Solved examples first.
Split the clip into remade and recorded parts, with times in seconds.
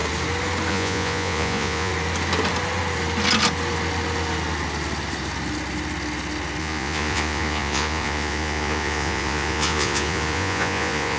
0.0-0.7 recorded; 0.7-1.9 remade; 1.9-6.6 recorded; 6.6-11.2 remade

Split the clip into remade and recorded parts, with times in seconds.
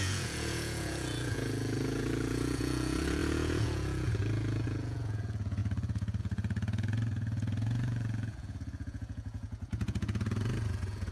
0.0-11.1 remade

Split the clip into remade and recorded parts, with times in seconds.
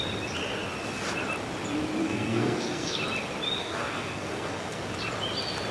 0.0-2.0 recorded; 2.0-3.0 remade; 3.0-3.6 recorded; 3.6-4.8 remade; 4.8-5.7 recorded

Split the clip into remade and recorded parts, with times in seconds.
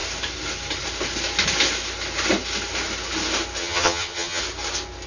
0.0-3.6 recorded; 3.6-4.4 remade; 4.4-5.1 recorded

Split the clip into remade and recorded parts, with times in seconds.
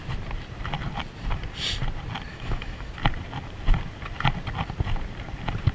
0.0-2.3 recorded; 2.3-2.9 remade; 2.9-5.7 recorded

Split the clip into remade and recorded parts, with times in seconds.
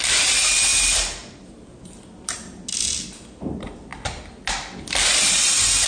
0.0-5.9 recorded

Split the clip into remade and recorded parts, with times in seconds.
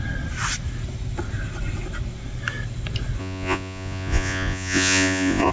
0.0-3.2 recorded; 3.2-5.5 remade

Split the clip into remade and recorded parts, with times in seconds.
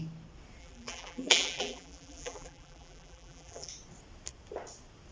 0.0-0.6 recorded; 0.6-3.7 remade; 3.7-5.1 recorded